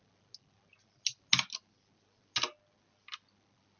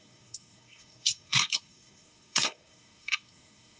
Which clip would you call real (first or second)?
first